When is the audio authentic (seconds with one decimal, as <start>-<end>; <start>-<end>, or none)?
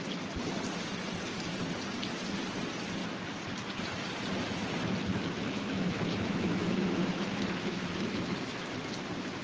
0.0-5.1; 8.7-9.4